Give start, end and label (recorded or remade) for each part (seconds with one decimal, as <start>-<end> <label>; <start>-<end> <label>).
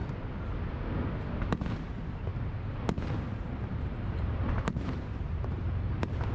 0.0-1.7 recorded; 1.7-2.3 remade; 2.3-3.4 recorded; 3.4-6.3 remade